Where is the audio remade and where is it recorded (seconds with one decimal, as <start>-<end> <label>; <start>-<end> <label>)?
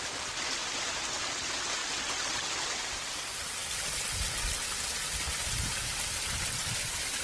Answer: 0.0-1.8 recorded; 1.8-2.9 remade; 2.9-7.2 recorded